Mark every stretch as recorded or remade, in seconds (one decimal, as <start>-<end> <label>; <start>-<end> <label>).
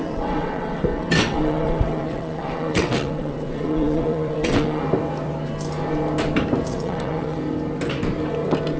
0.0-4.8 remade; 4.8-6.7 recorded; 6.7-7.4 remade; 7.4-8.8 recorded